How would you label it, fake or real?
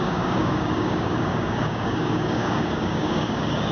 fake